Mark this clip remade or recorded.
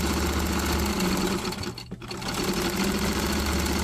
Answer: recorded